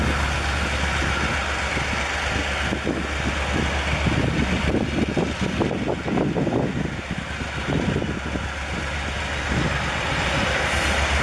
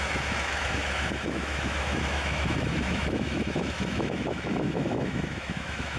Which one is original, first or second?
first